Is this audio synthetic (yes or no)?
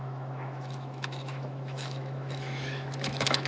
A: yes